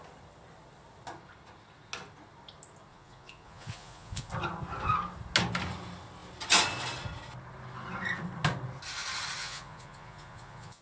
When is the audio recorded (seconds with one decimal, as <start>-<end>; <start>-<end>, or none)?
0.0-2.9; 4.3-9.4